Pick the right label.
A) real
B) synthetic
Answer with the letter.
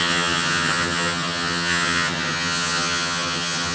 B